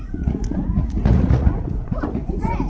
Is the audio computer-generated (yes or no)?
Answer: yes